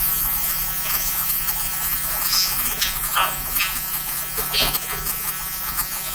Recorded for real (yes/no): no